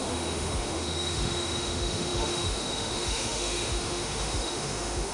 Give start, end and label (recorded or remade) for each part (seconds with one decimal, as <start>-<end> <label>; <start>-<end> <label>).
0.0-5.1 remade